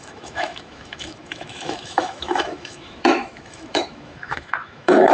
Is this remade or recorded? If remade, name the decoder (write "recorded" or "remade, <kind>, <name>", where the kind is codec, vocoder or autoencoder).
remade, autoencoder, DAC-VAE